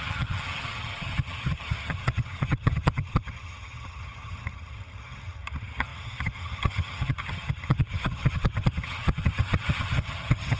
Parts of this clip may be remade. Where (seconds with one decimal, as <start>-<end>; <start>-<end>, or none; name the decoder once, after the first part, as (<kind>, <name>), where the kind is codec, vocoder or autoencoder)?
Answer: 0.0-10.6 (vocoder, HiFi-GAN)